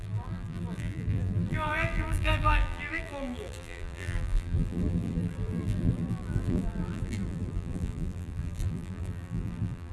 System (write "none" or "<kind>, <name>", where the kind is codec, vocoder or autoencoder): vocoder, BigVGAN v2